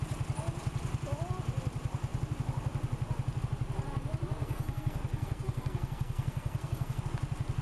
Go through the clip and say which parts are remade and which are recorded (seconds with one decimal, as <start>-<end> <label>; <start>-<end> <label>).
0.0-4.4 recorded; 4.4-7.0 remade; 7.0-7.6 recorded